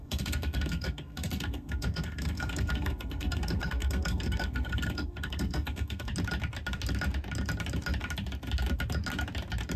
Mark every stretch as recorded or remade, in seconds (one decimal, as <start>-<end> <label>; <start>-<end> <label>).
0.0-6.1 remade; 6.1-9.8 recorded

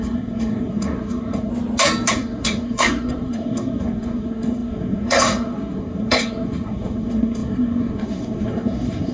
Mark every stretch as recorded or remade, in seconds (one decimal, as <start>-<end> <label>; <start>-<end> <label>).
0.0-1.5 remade; 1.5-2.1 recorded; 2.1-9.1 remade

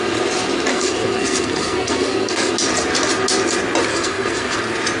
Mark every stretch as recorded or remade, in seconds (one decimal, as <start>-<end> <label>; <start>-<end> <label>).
0.0-0.7 recorded; 0.7-2.5 remade; 2.5-3.9 recorded; 3.9-4.6 remade; 4.6-5.0 recorded